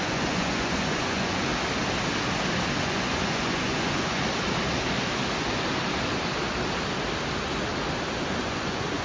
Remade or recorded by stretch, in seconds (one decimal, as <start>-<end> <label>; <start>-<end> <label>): 0.0-1.5 remade; 1.5-2.8 recorded; 2.8-4.2 remade; 4.2-8.4 recorded; 8.4-9.0 remade